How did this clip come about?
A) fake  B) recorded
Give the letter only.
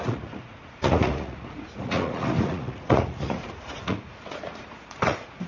A